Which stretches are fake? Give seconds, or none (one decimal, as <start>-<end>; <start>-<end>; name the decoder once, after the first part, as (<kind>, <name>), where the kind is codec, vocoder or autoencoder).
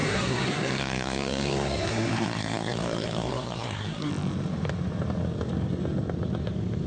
0.0-4.1 (codec, SNAC)